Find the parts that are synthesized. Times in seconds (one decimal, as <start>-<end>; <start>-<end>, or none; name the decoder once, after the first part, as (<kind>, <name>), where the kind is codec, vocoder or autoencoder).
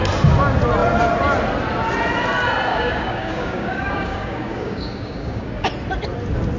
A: 2.7-5.7 (codec, DAC)